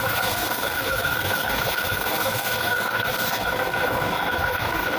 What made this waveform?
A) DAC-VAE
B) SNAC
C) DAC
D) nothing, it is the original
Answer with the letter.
C